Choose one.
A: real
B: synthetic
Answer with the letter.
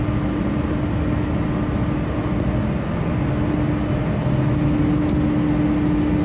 A